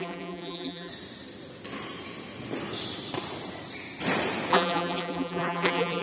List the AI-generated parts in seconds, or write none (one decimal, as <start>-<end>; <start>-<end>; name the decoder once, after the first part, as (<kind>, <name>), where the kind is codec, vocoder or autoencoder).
0.0-0.9 (vocoder, BigVGAN v2); 4.5-6.0